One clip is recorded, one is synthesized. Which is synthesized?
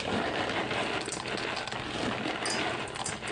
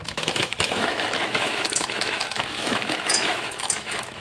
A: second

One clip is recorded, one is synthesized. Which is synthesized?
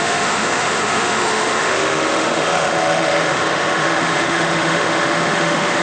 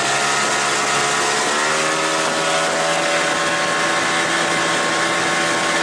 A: first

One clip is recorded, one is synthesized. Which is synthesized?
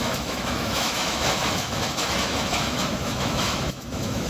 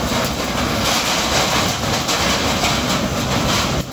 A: first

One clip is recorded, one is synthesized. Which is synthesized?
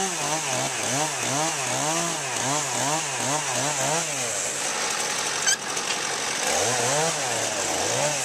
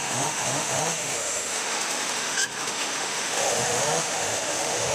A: second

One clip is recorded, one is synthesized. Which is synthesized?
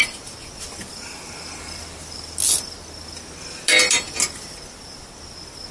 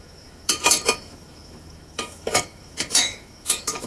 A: second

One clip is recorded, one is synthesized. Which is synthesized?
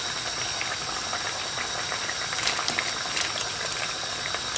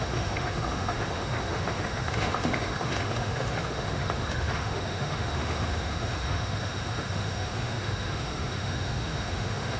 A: second